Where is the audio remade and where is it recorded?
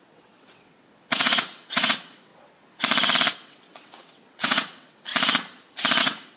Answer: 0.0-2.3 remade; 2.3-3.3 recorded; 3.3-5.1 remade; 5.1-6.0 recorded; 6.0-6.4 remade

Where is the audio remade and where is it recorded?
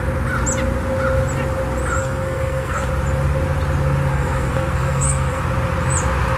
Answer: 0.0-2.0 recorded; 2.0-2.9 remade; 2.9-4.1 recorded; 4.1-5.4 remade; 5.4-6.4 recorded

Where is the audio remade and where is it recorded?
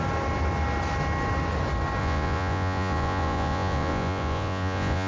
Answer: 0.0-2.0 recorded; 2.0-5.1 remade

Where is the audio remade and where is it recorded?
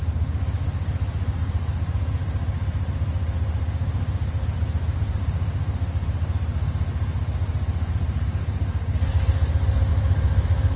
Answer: 0.0-9.9 recorded; 9.9-10.8 remade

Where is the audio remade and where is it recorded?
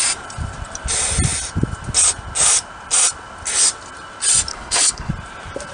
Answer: 0.0-4.5 recorded; 4.5-5.1 remade; 5.1-5.7 recorded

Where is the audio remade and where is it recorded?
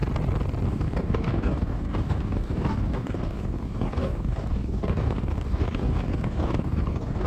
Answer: 0.0-0.7 recorded; 0.7-7.3 remade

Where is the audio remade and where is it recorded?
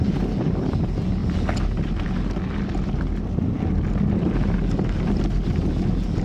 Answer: 0.0-6.2 recorded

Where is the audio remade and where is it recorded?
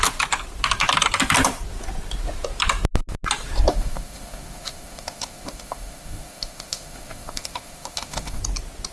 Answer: 0.0-3.7 recorded; 3.7-8.4 remade; 8.4-8.9 recorded